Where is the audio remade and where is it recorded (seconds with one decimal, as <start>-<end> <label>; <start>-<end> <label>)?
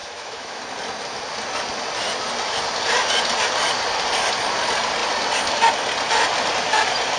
0.0-0.6 remade; 0.6-7.2 recorded